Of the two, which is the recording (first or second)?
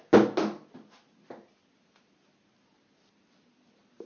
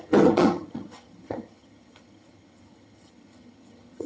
first